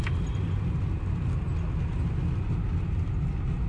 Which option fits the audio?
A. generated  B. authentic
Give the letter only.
B